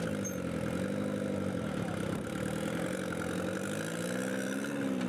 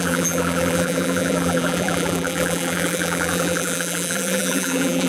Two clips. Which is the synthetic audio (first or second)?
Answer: second